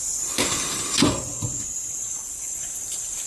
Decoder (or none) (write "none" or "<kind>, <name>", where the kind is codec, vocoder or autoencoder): none